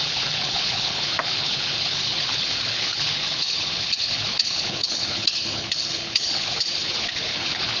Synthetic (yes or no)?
yes